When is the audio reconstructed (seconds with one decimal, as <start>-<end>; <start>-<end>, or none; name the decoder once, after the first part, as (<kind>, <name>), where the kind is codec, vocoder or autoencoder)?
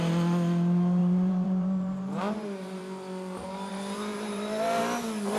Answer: 1.0-2.8 (vocoder, BigVGAN v2); 3.7-4.8